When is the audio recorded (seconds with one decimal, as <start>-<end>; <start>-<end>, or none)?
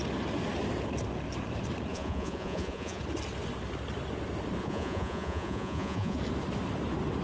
0.0-1.9; 3.0-4.6; 6.2-7.2